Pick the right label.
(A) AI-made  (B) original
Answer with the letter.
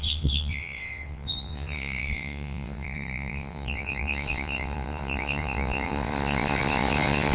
A